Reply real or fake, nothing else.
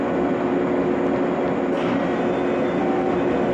real